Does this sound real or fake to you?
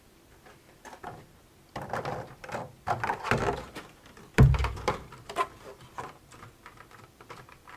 fake